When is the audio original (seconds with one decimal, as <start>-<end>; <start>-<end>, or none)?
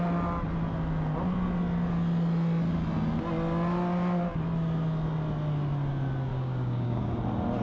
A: 0.0-6.3; 7.1-7.6